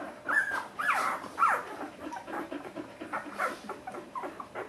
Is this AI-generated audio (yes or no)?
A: yes